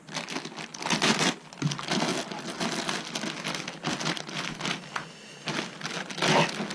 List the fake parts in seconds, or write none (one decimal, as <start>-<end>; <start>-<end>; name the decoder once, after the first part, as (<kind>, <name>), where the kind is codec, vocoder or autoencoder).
none